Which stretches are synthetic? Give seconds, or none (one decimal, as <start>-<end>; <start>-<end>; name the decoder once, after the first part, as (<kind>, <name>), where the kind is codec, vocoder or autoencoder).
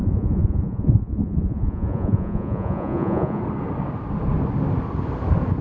0.0-3.4 (vocoder, Vocos)